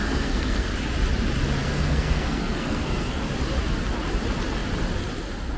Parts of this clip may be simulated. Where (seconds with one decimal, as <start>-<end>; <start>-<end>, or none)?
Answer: 0.0-0.7; 1.6-3.3